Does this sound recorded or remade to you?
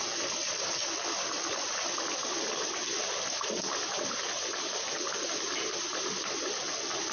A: recorded